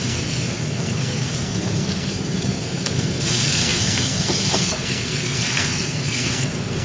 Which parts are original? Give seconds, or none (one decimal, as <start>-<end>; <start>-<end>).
none